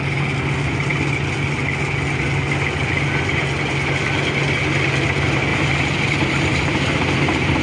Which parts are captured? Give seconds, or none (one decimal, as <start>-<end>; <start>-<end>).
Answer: 0.0-5.5